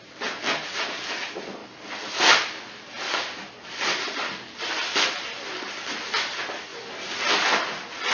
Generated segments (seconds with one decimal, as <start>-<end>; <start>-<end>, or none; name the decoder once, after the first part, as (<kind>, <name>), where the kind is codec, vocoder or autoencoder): none